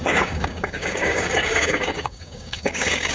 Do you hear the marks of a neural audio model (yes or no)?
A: yes